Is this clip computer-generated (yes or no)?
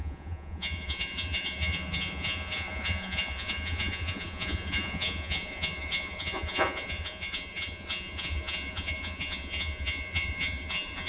yes